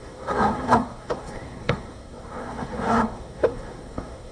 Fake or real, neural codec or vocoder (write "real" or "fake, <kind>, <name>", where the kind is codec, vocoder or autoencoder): fake, codec, SNAC